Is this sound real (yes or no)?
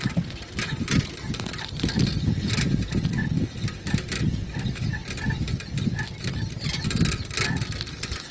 yes